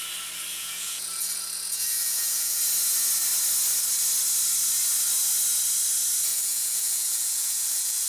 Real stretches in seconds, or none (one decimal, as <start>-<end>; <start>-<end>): 0.0-0.5; 2.6-6.3